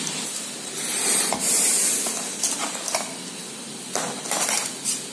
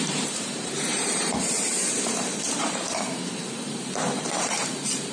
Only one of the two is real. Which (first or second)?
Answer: first